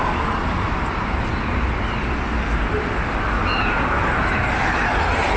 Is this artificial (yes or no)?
no